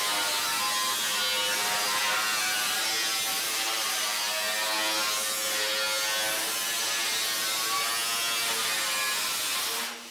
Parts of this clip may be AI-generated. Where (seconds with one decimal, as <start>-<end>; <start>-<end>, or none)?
3.3-4.2